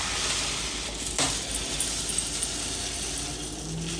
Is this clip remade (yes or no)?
no